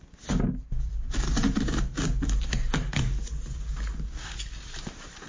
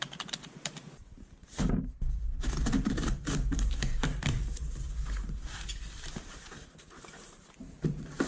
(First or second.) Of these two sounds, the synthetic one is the second